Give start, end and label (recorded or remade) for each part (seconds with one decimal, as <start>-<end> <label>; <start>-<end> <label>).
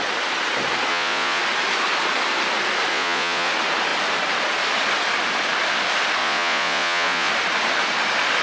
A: 0.0-0.9 recorded; 0.9-1.4 remade; 1.4-2.9 recorded; 2.9-3.5 remade; 3.5-6.2 recorded; 6.2-7.3 remade; 7.3-8.4 recorded